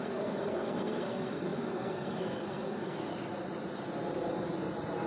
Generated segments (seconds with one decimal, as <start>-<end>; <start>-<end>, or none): 0.0-3.1